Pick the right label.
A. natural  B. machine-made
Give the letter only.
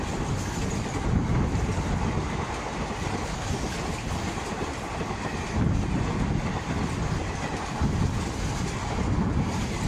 A